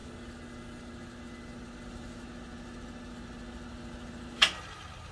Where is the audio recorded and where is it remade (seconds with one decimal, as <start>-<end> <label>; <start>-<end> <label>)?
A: 0.0-5.1 recorded